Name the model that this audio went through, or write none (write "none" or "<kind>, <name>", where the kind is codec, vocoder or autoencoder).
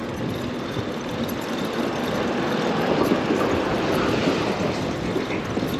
none